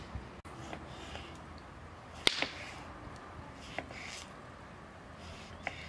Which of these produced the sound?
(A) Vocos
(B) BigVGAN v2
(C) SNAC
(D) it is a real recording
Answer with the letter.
D